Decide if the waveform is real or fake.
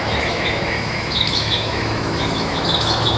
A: fake